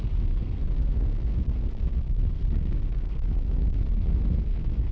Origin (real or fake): fake